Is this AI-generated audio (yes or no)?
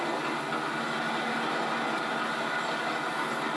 no